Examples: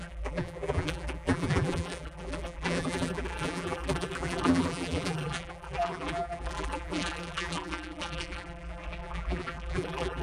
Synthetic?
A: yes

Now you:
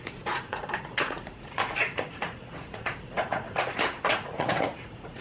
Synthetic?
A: yes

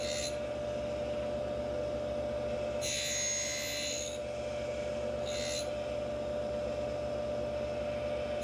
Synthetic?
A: no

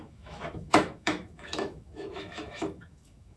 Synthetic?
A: yes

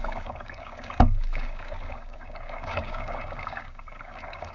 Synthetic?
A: yes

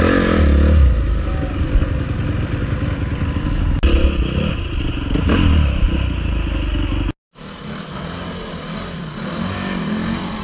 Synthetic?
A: no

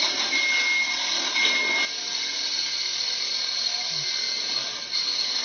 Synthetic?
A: no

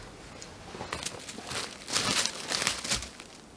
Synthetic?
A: no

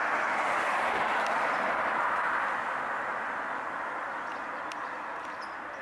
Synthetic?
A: no